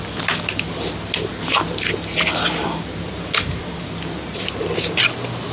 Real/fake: real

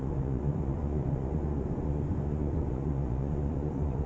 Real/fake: fake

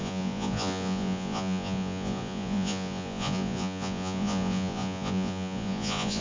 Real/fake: fake